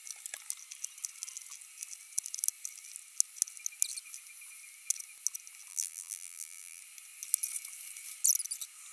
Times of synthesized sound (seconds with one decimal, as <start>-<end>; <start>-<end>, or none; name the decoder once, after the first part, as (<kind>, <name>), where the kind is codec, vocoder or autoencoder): 5.7-6.8 (vocoder, BigVGAN v2)